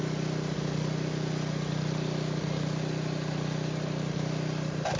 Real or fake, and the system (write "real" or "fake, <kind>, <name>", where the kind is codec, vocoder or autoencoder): real